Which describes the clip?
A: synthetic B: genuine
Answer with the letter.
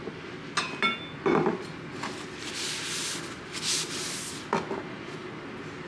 B